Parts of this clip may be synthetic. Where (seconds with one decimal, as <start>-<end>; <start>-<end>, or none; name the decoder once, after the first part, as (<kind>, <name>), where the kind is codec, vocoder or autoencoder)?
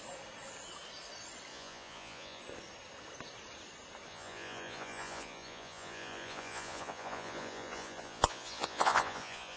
1.5-2.4 (vocoder, Vocos); 4.1-9.6